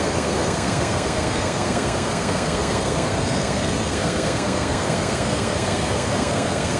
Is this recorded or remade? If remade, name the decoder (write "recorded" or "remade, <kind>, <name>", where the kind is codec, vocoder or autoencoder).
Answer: remade, codec, SNAC